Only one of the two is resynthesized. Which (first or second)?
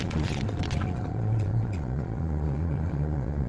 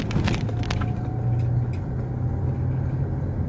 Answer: first